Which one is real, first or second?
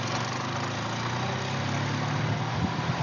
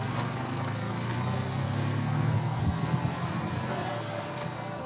first